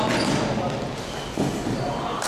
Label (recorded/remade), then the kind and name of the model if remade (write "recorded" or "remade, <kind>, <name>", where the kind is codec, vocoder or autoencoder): recorded